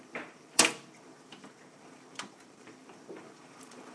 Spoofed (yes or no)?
yes